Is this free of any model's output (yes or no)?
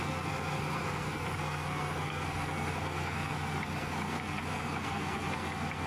no